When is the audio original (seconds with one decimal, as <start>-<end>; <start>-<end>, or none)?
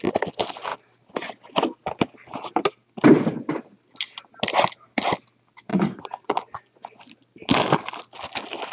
0.0-5.7; 7.1-8.7